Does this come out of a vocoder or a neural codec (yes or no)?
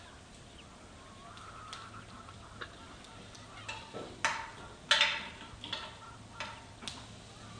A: no